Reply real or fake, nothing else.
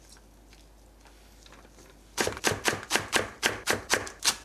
real